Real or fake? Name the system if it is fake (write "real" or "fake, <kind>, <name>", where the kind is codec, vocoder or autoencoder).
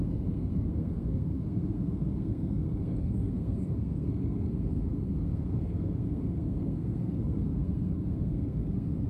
fake, codec, SNAC